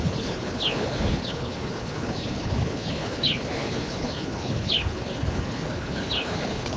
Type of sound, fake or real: fake